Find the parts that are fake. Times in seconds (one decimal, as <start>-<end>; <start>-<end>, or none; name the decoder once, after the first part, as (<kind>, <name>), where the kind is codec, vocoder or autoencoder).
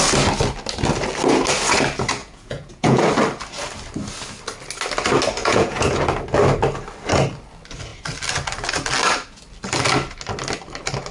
2.2-3.0 (vocoder, Vocos); 5.4-6.0